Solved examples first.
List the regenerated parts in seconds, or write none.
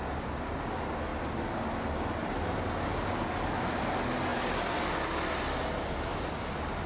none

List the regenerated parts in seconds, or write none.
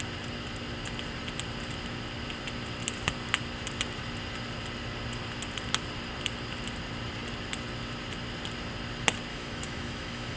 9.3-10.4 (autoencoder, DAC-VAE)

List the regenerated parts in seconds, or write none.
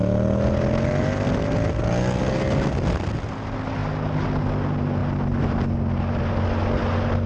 none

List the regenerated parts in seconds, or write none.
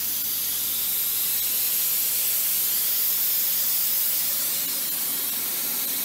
none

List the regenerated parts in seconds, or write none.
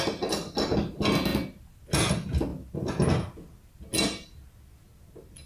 none